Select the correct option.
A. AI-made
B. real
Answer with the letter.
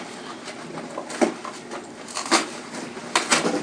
B